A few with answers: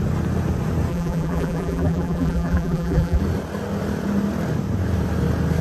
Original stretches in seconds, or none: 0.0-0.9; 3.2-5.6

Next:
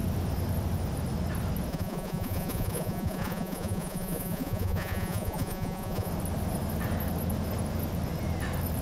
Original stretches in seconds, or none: 0.0-1.7; 6.1-8.8

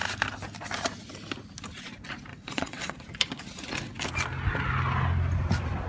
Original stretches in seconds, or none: 0.0-2.3; 3.0-5.9

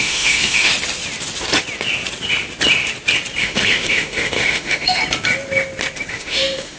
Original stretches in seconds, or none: 0.7-3.4; 5.0-6.1

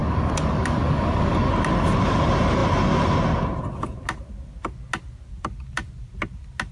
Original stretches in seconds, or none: 1.5-6.7

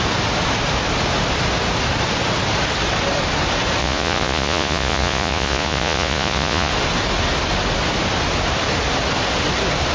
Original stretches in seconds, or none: 0.0-3.8; 6.7-9.9